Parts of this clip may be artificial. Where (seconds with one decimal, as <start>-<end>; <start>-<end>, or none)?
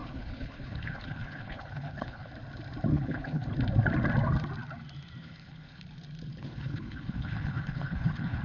0.0-2.3; 2.9-3.5; 5.2-5.8; 6.3-8.4